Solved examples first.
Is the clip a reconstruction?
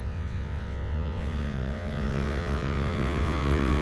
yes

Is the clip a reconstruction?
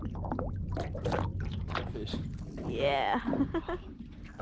no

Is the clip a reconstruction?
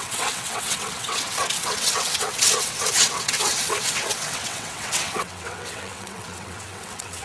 yes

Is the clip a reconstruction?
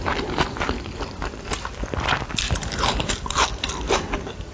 no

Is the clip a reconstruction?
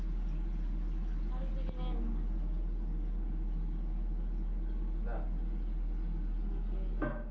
no